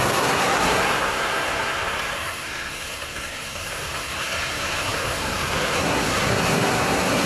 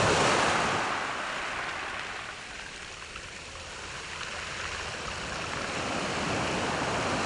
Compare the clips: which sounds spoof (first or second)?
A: first